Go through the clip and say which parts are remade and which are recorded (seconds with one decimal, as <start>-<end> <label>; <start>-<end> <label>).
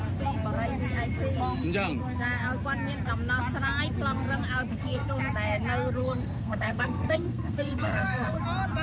0.0-4.7 recorded; 4.7-5.2 remade; 5.2-6.0 recorded; 6.0-8.4 remade; 8.4-8.8 recorded